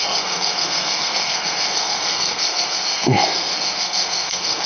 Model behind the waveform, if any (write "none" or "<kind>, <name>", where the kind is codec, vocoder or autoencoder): codec, SNAC